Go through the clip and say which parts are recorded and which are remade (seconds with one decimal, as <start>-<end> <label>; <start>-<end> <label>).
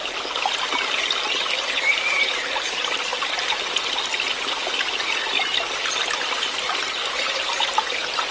0.0-8.3 recorded